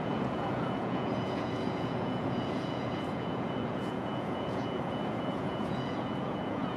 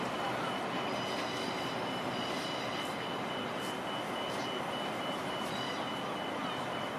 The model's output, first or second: first